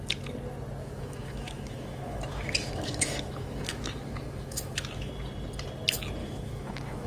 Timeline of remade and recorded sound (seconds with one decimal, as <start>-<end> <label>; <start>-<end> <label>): 0.0-0.8 recorded; 0.8-5.1 remade; 5.1-6.2 recorded; 6.2-7.1 remade